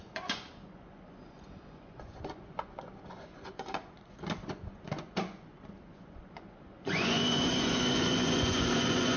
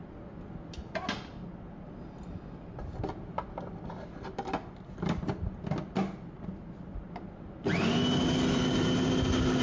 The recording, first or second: second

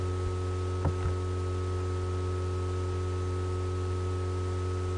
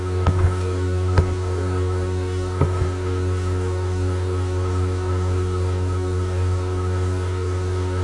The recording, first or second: first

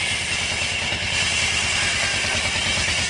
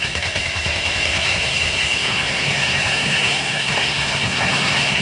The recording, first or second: first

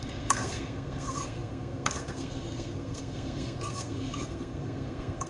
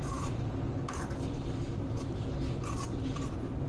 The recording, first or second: second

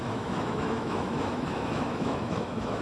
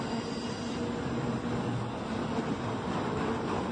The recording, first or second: second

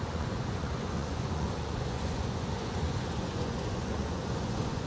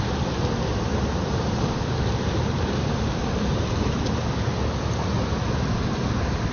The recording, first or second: second